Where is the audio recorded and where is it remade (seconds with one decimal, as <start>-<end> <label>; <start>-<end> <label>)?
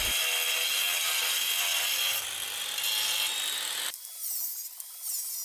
0.0-5.4 recorded